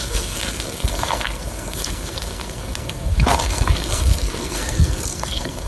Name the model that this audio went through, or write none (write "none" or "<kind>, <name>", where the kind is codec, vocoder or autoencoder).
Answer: codec, SNAC